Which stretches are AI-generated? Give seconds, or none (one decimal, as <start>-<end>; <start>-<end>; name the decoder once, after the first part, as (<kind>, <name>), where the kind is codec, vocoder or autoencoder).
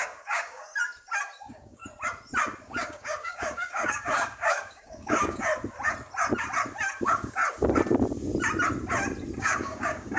0.0-0.7 (codec, DAC); 1.4-1.8; 2.6-5.5; 7.0-7.4; 9.4-10.2